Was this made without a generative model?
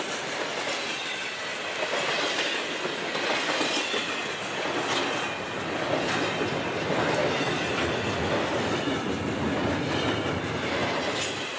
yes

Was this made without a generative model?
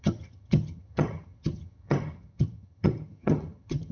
no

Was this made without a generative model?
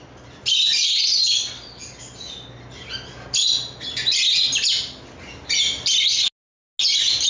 yes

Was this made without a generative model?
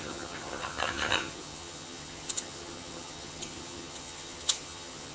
no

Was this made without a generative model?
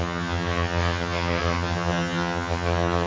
no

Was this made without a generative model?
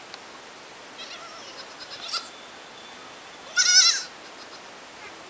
yes